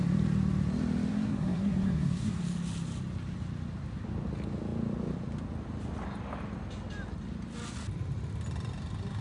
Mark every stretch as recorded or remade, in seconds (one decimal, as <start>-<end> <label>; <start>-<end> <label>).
0.0-1.1 recorded; 1.1-2.4 remade; 2.4-9.2 recorded